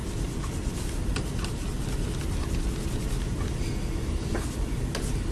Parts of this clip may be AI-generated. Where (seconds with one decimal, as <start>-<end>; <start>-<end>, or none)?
none